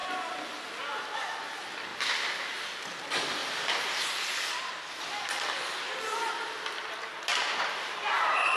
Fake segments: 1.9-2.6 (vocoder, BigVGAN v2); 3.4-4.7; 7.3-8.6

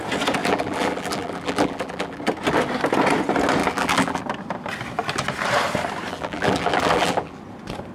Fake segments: 0.4-2.2 (vocoder, BigVGAN v2); 3.6-4.2; 6.1-7.4

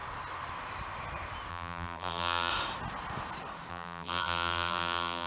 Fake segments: 1.5-2.5 (vocoder, BigVGAN v2); 3.7-5.3

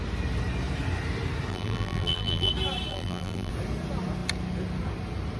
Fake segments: 1.5-2.5 (vocoder, BigVGAN v2); 2.9-3.5

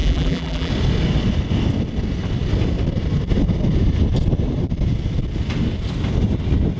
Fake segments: 0.0-0.7 (vocoder, BigVGAN v2)

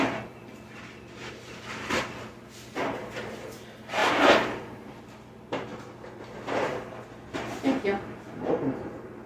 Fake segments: 4.0-5.0 (vocoder, BigVGAN v2)

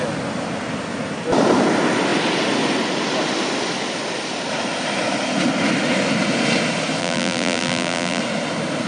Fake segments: 7.0-8.2 (vocoder, BigVGAN v2)

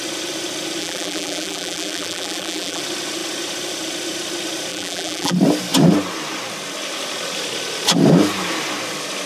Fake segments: 0.8-2.8 (vocoder, BigVGAN v2); 4.7-5.3